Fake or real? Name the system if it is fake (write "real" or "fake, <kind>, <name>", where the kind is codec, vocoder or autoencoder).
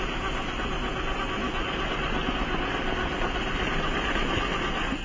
real